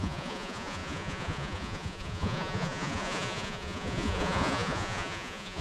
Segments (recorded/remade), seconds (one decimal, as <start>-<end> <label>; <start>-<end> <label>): 0.0-5.6 remade